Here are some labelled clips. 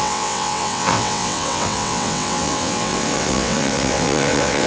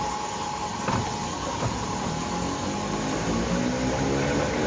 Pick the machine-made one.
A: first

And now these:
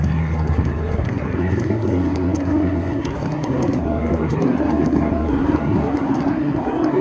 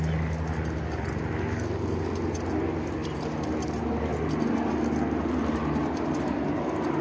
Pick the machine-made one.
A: first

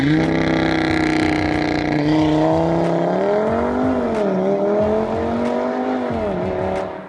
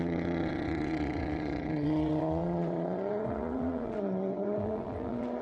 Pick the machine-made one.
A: second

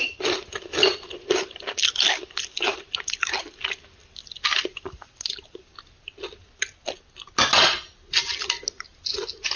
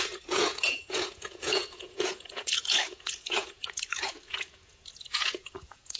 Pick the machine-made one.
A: second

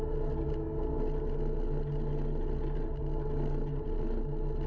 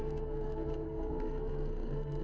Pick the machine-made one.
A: second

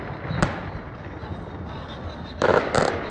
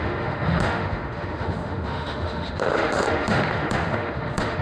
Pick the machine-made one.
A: second